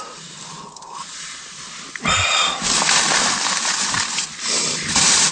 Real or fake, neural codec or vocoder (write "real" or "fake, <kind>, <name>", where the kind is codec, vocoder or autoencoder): real